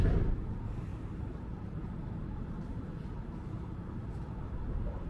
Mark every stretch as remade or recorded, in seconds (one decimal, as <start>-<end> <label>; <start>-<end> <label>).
0.0-5.1 remade